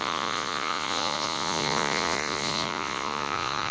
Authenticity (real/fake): fake